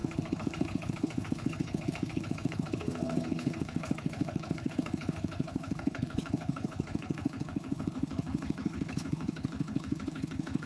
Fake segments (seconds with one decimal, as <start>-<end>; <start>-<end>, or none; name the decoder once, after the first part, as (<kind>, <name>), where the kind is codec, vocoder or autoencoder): 0.0-10.7 (codec, HILCodec)